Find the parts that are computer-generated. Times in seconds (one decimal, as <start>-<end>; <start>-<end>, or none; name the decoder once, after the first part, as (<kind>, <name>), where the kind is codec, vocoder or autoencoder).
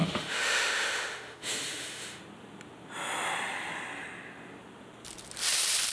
0.0-2.2 (autoencoder, DAC-VAE)